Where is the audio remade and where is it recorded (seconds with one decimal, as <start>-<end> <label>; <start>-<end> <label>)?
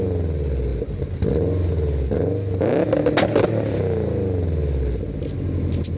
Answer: 0.0-6.0 recorded